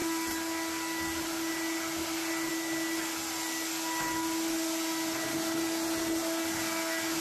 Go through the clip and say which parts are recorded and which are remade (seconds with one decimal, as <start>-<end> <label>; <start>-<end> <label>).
0.0-7.2 recorded